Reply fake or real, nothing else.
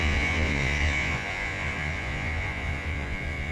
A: fake